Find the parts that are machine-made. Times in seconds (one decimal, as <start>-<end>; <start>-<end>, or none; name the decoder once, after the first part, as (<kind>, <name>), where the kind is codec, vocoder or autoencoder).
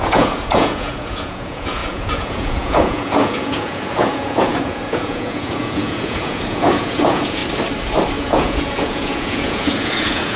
0.0-7.4 (vocoder, Vocos); 8.2-10.4